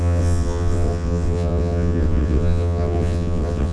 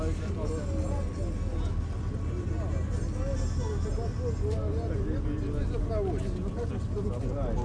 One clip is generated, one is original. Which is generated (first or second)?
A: first